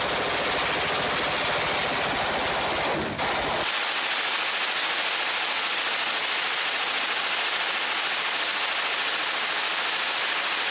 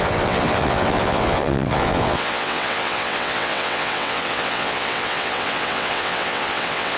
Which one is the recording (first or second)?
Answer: first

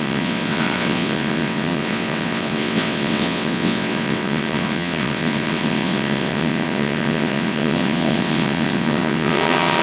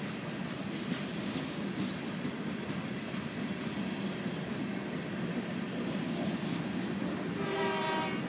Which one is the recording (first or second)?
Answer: second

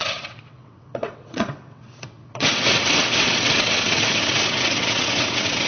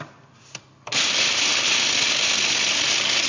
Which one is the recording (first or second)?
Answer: second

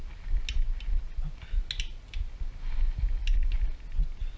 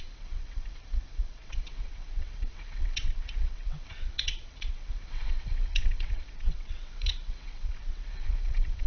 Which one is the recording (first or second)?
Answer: first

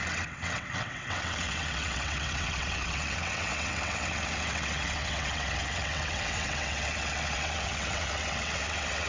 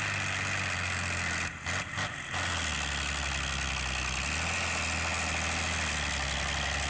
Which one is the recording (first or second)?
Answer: second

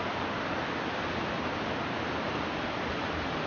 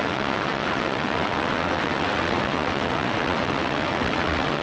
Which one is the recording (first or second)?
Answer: first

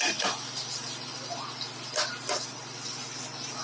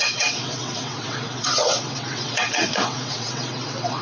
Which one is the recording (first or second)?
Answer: first